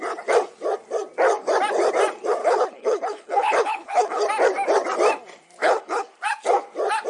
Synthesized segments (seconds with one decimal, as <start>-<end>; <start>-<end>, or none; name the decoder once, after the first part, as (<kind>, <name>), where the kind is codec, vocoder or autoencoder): 2.4-4.2 (codec, HILCodec); 5.6-6.1